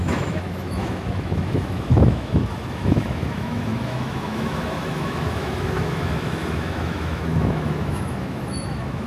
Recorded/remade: remade